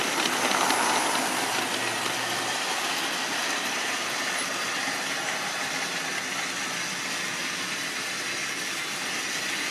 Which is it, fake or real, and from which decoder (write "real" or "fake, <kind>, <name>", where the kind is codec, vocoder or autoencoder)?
real